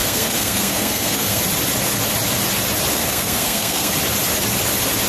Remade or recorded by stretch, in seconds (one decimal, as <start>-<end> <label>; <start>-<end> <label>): 0.0-1.4 remade; 1.4-2.9 recorded; 2.9-3.9 remade; 3.9-5.1 recorded